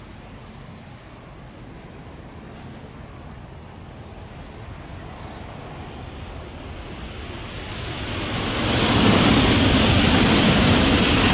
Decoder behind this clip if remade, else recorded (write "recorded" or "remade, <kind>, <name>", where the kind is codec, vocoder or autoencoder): recorded